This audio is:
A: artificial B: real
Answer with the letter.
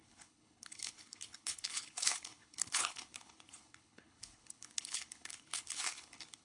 A